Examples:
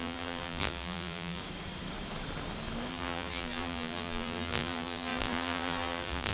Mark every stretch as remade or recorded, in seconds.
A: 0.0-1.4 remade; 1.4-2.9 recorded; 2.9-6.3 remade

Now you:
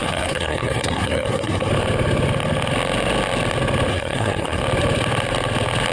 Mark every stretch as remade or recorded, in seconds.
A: 0.0-1.7 remade; 1.7-3.9 recorded; 3.9-4.6 remade; 4.6-5.9 recorded

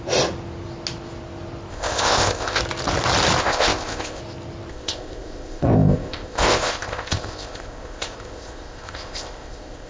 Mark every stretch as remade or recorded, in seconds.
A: 0.0-1.7 recorded; 1.7-2.6 remade; 2.6-3.4 recorded; 3.4-4.2 remade; 4.2-4.7 recorded; 4.7-9.9 remade

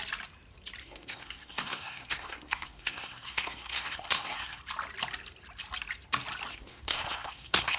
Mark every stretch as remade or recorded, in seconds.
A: 0.0-0.8 recorded; 0.8-4.6 remade; 4.6-6.5 recorded; 6.5-7.8 remade

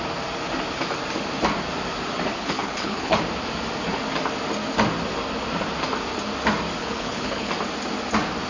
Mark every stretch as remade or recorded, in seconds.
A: 0.0-2.3 recorded; 2.3-3.2 remade; 3.2-6.8 recorded; 6.8-7.5 remade; 7.5-8.5 recorded

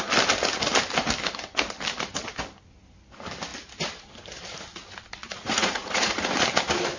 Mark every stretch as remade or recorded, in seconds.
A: 0.0-5.2 recorded; 5.2-6.3 remade; 6.3-7.0 recorded

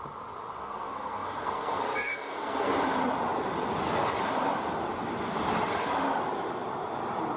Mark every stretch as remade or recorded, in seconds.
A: 0.0-0.6 recorded; 0.6-2.7 remade; 2.7-7.4 recorded